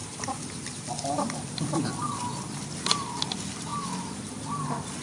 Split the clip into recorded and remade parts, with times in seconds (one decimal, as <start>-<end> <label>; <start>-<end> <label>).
0.0-5.0 recorded

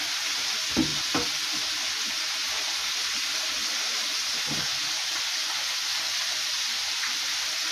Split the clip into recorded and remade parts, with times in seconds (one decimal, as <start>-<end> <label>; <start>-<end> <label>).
0.0-5.9 recorded; 5.9-7.7 remade

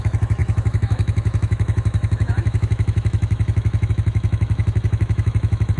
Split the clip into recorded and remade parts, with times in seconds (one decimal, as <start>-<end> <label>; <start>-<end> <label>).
0.0-5.8 remade

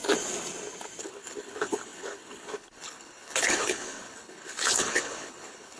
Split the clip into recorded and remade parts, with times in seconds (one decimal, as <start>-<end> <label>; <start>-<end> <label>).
0.0-1.0 recorded; 1.0-5.8 remade

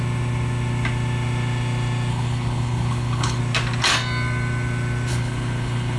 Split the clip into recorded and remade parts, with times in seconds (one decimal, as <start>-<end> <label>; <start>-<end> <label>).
0.0-2.1 recorded; 2.1-3.4 remade; 3.4-5.1 recorded; 5.1-6.0 remade